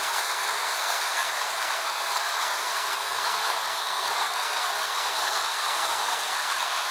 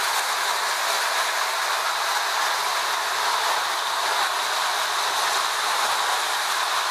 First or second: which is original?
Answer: second